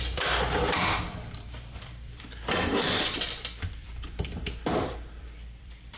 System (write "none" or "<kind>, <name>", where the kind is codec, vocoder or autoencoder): vocoder, BigVGAN v2